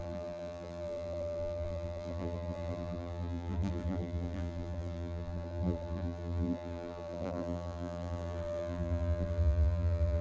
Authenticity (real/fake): fake